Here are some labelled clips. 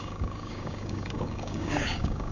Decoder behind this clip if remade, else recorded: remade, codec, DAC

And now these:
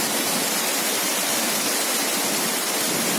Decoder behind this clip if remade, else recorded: remade, vocoder, BigVGAN v2